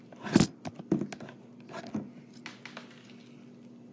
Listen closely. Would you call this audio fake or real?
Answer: real